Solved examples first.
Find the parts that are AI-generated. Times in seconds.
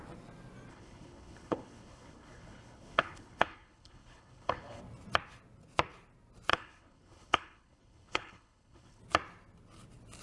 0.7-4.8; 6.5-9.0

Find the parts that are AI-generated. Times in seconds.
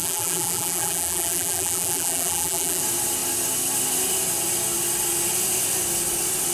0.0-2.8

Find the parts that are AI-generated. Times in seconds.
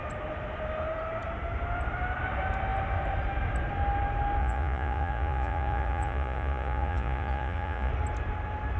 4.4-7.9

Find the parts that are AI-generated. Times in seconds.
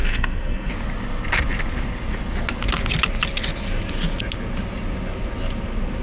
0.0-0.7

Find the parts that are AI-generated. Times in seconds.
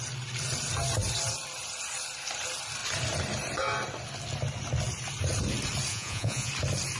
5.9-6.5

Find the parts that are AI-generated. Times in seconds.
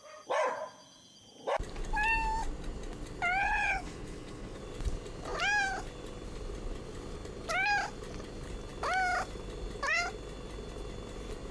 3.4-4.6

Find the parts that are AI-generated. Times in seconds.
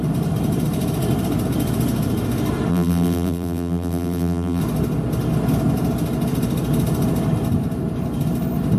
2.7-4.6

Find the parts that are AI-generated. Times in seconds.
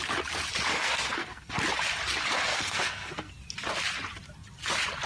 0.7-1.5; 2.5-3.3